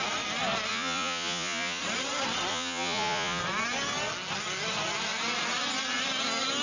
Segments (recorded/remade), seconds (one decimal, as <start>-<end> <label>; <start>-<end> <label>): 0.0-0.7 recorded; 0.7-1.8 remade; 1.8-2.5 recorded; 2.5-3.4 remade; 3.4-6.6 recorded